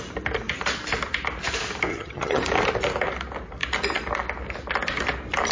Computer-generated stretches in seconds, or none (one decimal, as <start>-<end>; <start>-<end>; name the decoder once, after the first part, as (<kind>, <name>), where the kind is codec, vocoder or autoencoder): 1.9-2.4 (vocoder, HiFi-GAN)